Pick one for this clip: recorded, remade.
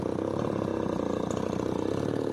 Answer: recorded